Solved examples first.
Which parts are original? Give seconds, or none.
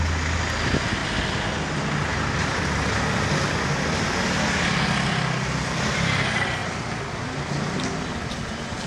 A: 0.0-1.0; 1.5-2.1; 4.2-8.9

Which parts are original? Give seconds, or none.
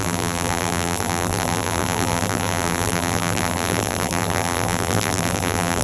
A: none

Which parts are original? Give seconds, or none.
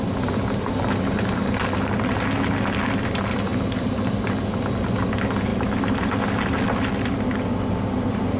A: 0.0-5.5; 6.2-8.4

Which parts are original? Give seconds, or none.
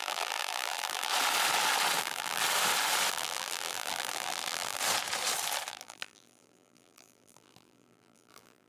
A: 1.1-2.0; 2.4-3.1; 4.8-5.7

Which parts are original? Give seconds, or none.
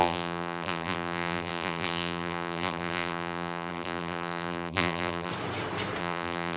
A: 5.3-6.0